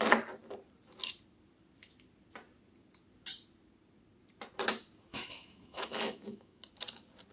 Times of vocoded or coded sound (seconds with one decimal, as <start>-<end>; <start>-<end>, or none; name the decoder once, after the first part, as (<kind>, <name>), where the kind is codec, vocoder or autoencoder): 5.1-6.6 (autoencoder, DAC-VAE)